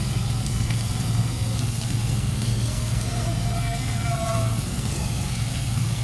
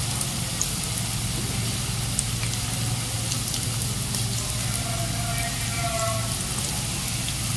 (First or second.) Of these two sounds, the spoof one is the first